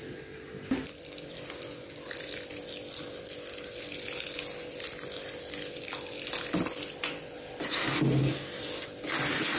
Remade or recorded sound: recorded